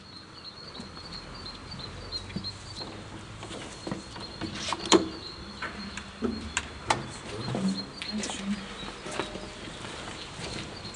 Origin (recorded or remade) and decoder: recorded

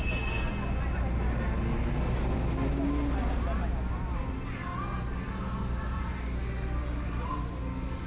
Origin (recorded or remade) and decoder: recorded